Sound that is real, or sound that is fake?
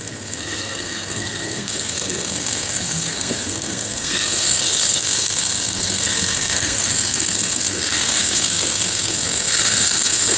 fake